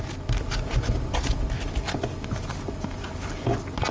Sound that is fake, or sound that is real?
real